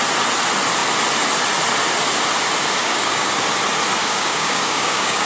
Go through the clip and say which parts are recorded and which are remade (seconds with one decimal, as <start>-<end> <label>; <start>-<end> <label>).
0.0-2.8 recorded; 2.8-3.3 remade; 3.3-4.0 recorded; 4.0-5.3 remade